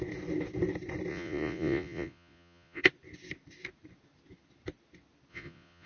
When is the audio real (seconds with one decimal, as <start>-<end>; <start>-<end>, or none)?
0.0-1.1; 2.8-5.3